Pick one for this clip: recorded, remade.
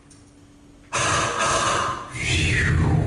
recorded